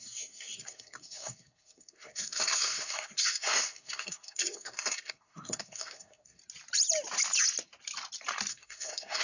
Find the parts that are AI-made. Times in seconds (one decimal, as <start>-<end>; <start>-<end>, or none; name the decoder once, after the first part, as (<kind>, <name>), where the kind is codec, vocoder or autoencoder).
0.0-6.4 (codec, SNAC); 8.5-9.2